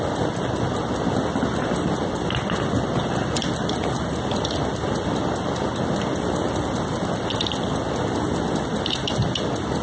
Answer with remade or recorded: recorded